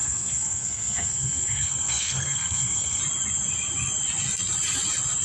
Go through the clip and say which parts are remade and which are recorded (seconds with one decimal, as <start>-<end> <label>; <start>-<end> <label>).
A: 0.0-3.0 remade; 3.0-5.2 recorded